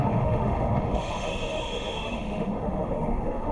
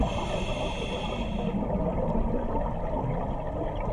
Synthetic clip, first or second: first